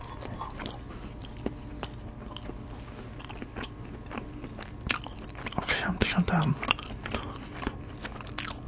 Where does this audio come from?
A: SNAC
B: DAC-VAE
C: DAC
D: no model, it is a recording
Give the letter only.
D